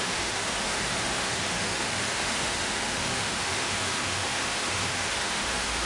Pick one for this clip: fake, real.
fake